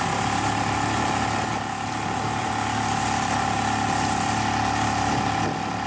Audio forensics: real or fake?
real